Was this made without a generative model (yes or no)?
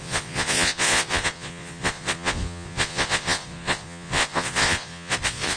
no